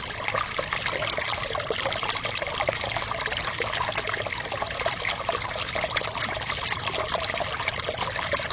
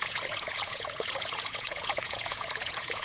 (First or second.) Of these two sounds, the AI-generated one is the second